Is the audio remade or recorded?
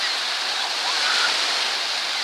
recorded